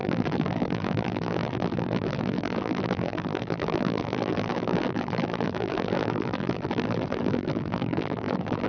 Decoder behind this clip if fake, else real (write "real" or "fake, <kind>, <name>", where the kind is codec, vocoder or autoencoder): fake, vocoder, BigVGAN v2